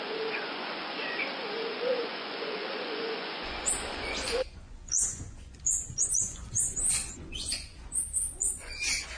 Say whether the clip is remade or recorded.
remade